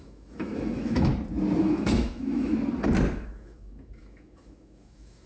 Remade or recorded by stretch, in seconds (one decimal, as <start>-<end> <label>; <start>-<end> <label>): 0.0-1.1 remade; 1.1-1.6 recorded; 1.6-2.5 remade; 2.5-3.1 recorded; 3.1-5.3 remade